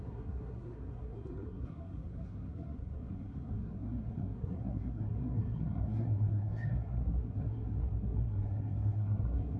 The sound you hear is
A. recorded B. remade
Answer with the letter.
B